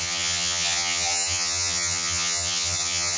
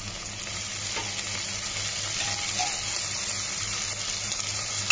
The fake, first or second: first